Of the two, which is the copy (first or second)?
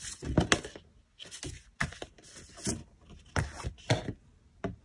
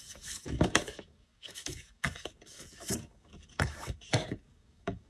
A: second